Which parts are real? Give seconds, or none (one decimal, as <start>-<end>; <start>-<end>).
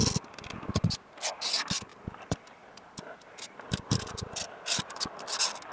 0.0-1.9; 5.3-5.7